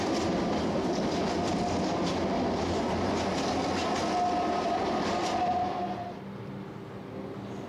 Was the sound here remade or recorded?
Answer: recorded